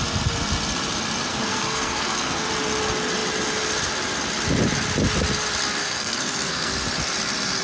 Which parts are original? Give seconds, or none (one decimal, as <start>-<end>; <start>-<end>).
0.0-1.3; 2.5-5.8; 6.7-7.6